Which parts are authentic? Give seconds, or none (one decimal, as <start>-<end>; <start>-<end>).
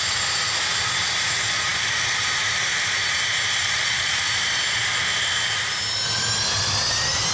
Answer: 0.0-3.6; 4.2-7.3